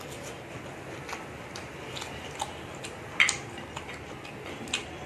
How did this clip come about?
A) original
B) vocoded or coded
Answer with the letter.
A